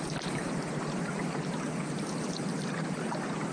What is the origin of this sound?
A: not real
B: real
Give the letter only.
B